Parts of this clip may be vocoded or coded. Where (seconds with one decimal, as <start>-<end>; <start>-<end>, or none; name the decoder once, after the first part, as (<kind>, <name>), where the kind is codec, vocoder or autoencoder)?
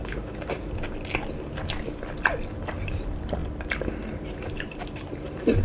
0.0-0.6 (vocoder, BigVGAN v2); 2.7-3.4; 4.3-5.6